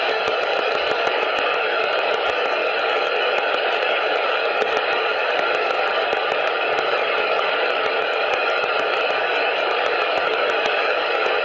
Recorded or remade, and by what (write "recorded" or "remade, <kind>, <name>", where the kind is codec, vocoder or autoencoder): remade, codec, DAC